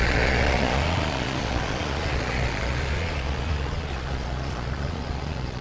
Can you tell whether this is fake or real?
fake